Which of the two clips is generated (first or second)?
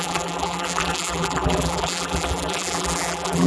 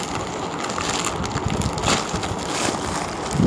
first